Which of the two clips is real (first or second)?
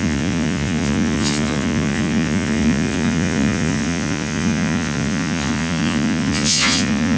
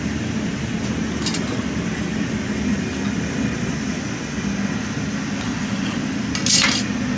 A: second